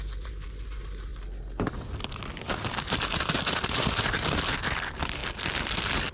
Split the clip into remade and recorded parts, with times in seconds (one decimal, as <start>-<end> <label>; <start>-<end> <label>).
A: 0.0-1.1 remade; 1.1-4.8 recorded; 4.8-5.2 remade; 5.2-6.1 recorded